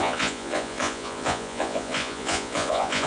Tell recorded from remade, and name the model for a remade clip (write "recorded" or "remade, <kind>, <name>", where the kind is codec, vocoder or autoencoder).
remade, vocoder, Vocos